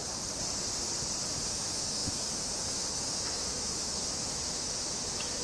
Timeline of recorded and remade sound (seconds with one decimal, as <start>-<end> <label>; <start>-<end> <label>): 0.0-1.5 recorded; 1.5-5.4 remade